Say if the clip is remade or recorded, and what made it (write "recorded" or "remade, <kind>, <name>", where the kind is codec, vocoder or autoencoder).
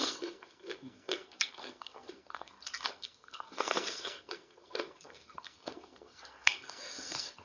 remade, codec, SNAC